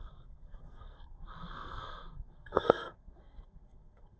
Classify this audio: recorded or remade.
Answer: remade